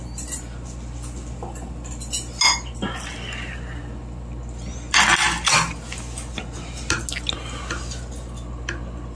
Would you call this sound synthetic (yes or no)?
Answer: no